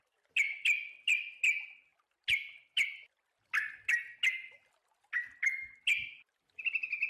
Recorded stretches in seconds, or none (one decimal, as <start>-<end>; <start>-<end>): 0.0-7.1